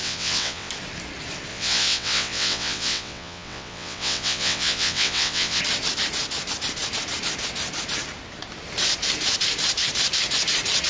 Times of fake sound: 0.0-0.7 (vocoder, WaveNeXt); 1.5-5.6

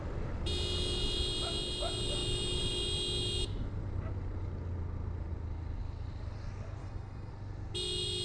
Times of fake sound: 6.8-7.3 (autoencoder, DAC-VAE)

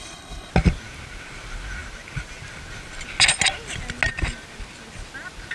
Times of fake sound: 0.0-0.5 (codec, HILCodec)

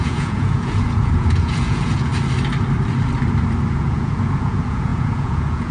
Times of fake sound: 0.0-2.1 (vocoder, Vocos); 3.7-5.7

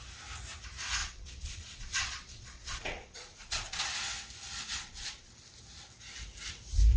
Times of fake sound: 1.0-3.8 (vocoder, Vocos); 4.7-5.3